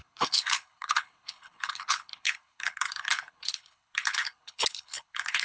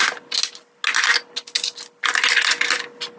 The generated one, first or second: first